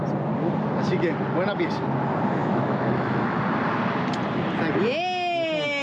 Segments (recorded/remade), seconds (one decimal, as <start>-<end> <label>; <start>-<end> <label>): 0.0-2.4 recorded; 2.4-3.4 remade; 3.4-5.8 recorded